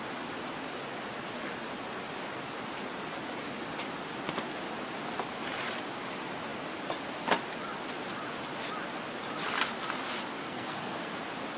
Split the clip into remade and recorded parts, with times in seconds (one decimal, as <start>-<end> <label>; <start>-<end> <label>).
0.0-10.4 recorded; 10.4-11.1 remade; 11.1-11.6 recorded